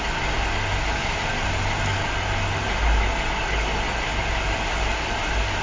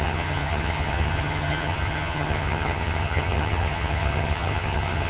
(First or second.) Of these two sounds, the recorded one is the first